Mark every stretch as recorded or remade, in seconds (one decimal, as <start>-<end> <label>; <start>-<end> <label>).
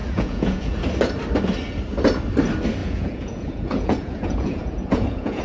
0.0-0.8 remade; 0.8-2.8 recorded; 2.8-5.4 remade